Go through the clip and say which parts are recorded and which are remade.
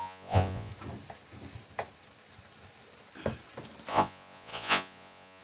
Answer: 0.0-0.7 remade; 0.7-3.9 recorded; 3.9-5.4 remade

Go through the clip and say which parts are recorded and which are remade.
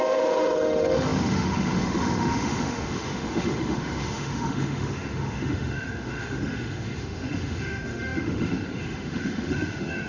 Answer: 0.0-10.1 remade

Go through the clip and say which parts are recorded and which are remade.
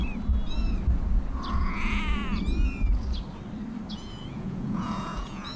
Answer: 0.0-1.5 recorded; 1.5-2.2 remade; 2.2-3.9 recorded; 3.9-5.6 remade